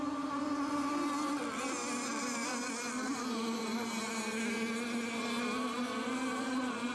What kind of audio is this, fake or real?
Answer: real